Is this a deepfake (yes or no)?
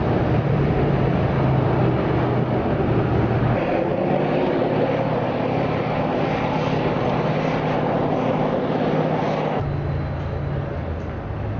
no